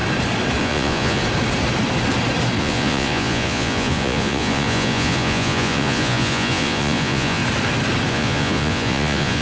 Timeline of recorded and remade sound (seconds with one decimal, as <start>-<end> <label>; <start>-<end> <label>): 0.0-0.6 recorded; 0.6-1.2 remade; 1.2-2.6 recorded; 2.6-7.4 remade; 7.4-8.1 recorded; 8.1-9.4 remade